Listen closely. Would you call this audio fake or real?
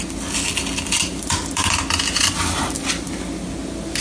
real